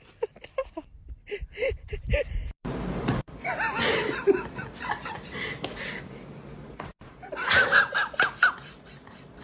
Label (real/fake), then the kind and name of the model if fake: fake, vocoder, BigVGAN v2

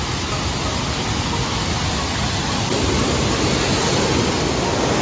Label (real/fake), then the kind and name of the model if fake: real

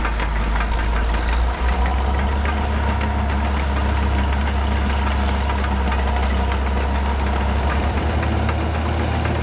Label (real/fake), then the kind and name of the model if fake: real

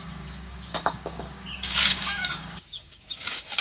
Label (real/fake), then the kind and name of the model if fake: fake, codec, DAC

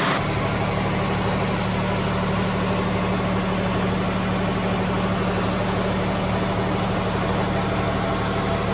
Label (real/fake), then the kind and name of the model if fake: real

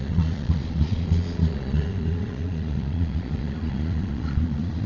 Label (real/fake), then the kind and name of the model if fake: fake, vocoder, Vocos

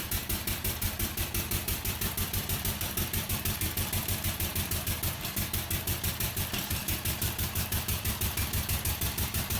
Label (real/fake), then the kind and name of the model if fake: fake, vocoder, BigVGAN v2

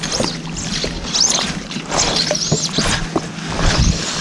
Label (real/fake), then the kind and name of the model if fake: real